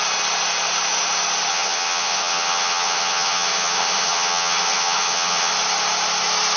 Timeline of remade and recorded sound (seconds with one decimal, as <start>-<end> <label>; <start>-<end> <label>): 0.0-1.5 recorded; 1.5-5.5 remade; 5.5-6.6 recorded